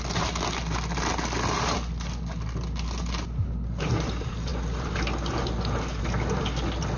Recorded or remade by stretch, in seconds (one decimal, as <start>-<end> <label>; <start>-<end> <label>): 0.0-7.0 recorded